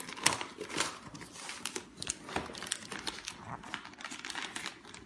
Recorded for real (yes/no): yes